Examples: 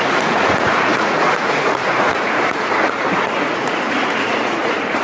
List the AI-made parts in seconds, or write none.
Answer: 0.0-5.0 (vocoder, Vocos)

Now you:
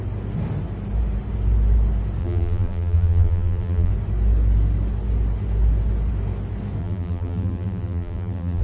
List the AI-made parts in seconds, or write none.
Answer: 2.2-3.9 (vocoder, BigVGAN v2); 6.8-8.6